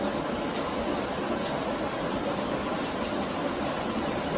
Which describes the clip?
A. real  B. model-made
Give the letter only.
A